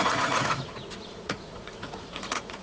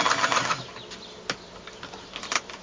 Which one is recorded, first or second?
second